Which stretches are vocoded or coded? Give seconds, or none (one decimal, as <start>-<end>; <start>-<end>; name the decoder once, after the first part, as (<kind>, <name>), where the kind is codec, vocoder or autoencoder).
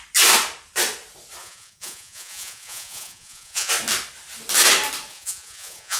1.4-3.7 (vocoder, Vocos); 5.1-6.0